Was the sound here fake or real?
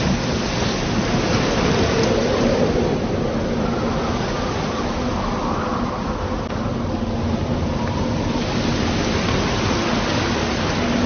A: real